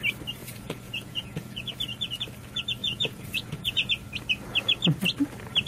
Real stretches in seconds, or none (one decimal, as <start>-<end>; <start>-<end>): 0.0-0.4; 1.7-2.8; 3.9-5.7